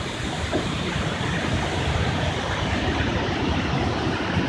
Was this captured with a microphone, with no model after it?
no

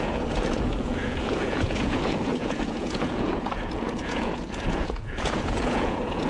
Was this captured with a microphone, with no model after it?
no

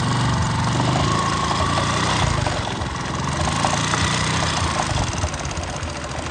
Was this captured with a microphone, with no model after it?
yes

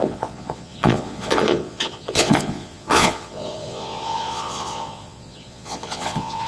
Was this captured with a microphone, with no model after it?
no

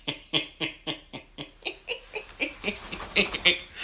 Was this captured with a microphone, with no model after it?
yes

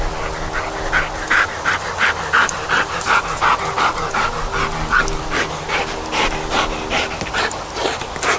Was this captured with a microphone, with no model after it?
yes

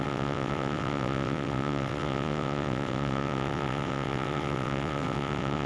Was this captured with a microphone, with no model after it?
no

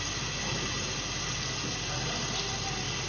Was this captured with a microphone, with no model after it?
yes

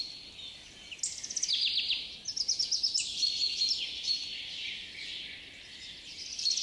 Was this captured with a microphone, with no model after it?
yes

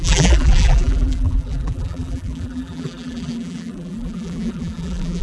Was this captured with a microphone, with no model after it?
no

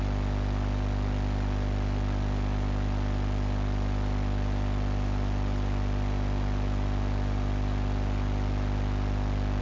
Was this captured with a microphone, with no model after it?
yes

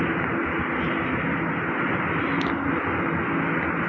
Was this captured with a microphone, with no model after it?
yes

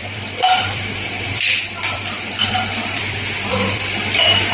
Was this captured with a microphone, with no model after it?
no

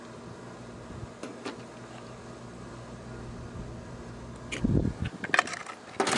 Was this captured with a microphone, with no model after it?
yes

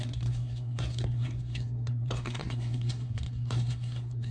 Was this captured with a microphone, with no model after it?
no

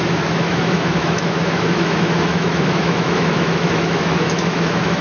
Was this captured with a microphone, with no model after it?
no